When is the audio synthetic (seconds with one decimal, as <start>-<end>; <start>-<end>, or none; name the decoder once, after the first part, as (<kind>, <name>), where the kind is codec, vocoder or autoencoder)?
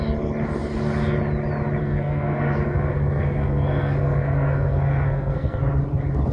1.8-5.6 (codec, SNAC)